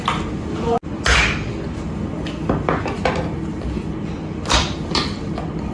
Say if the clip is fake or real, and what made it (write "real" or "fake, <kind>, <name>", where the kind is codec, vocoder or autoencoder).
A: real